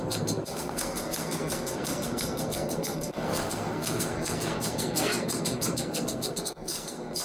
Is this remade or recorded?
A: remade